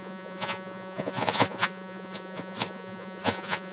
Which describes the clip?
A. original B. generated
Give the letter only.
B